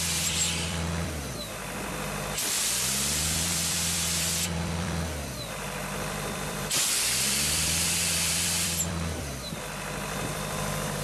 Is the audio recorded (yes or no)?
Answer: no